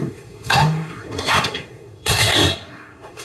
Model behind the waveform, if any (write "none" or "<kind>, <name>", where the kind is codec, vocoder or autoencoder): codec, SNAC